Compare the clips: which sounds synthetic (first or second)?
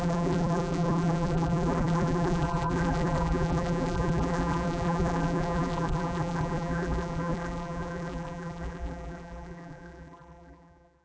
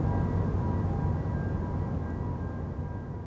first